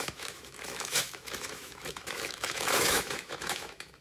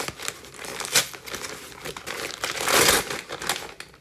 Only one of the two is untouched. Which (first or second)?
second